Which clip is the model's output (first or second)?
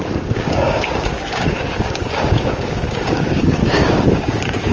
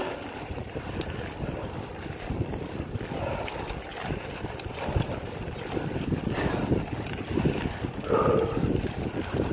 first